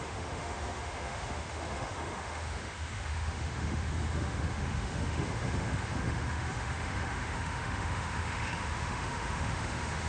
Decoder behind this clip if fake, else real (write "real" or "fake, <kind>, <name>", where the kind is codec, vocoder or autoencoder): fake, autoencoder, DAC-VAE